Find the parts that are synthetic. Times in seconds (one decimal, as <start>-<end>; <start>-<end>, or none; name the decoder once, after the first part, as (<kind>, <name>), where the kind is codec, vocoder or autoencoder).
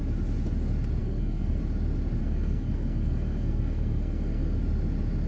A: 1.0-1.6 (codec, SNAC); 2.2-4.6